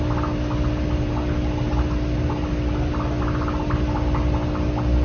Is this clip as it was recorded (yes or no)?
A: yes